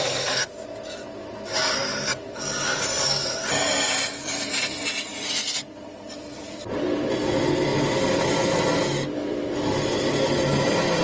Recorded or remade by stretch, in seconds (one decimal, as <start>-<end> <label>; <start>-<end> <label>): 0.0-11.0 recorded